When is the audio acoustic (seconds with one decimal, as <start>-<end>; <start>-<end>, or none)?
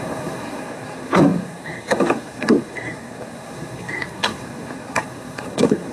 none